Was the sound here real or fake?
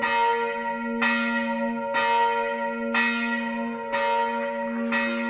real